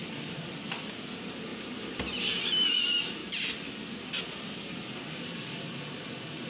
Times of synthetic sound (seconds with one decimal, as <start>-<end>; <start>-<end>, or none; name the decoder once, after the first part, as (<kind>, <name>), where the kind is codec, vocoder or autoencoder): none